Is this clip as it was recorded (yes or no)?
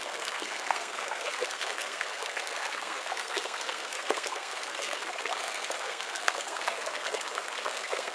no